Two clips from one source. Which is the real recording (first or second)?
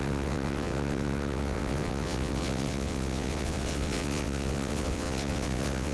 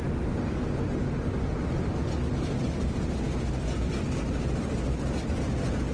second